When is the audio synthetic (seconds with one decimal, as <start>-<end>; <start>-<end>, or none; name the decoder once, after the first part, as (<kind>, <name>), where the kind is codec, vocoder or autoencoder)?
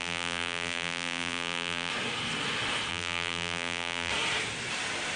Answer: 0.0-1.9 (vocoder, BigVGAN v2); 2.9-4.1